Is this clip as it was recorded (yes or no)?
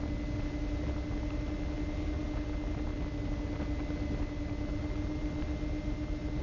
yes